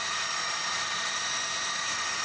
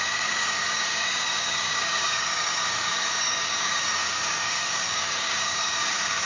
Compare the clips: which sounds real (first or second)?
first